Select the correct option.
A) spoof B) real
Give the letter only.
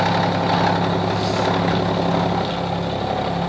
B